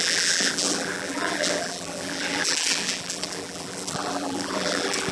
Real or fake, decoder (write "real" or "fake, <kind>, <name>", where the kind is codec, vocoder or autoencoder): fake, vocoder, BigVGAN v2